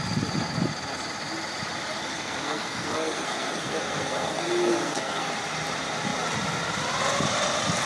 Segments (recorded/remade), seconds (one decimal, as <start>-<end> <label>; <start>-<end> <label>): 0.0-2.1 recorded; 2.1-5.3 remade; 5.3-7.9 recorded